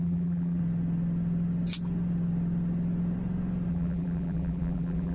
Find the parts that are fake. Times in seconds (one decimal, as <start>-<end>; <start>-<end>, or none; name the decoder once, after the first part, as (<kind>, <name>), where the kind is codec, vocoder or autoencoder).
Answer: 0.0-0.6 (vocoder, BigVGAN v2); 3.7-5.1